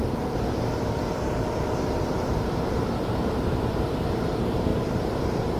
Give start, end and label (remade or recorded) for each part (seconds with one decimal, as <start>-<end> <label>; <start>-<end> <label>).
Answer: 0.0-5.6 remade